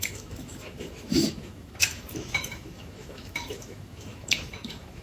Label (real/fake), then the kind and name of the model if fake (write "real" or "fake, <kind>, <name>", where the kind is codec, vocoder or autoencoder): fake, autoencoder, DAC-VAE